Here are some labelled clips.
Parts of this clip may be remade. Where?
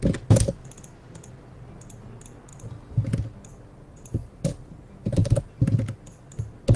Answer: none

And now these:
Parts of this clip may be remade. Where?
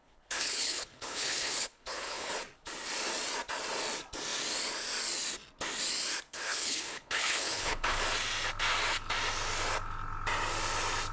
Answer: 0.0-2.3 (codec, HILCodec); 6.3-8.0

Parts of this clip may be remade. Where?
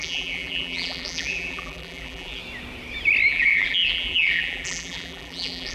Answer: 0.0-2.4 (vocoder, BigVGAN v2); 3.3-5.7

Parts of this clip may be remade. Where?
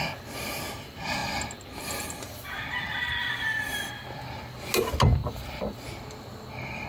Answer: 3.2-3.9 (vocoder, BigVGAN v2); 5.2-5.9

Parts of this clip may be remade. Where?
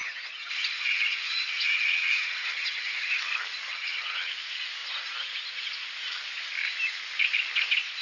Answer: 0.0-3.2 (vocoder, HiFi-GAN); 3.7-4.3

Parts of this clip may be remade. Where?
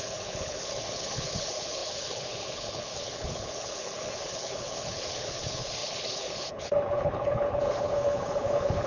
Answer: 0.0-8.9 (codec, HILCodec)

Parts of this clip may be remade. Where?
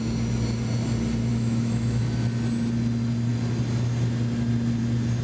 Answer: 1.3-2.0 (autoencoder, DAC-VAE)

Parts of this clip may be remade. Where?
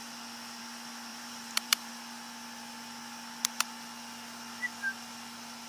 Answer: 1.1-1.9 (vocoder, BigVGAN v2)